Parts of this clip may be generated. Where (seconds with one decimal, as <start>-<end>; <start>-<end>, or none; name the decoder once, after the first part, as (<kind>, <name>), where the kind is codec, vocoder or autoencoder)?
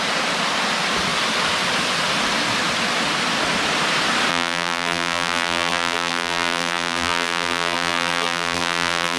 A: 4.3-9.2 (vocoder, BigVGAN v2)